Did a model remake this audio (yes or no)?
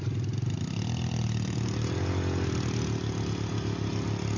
no